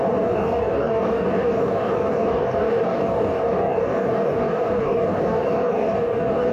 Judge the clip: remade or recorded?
remade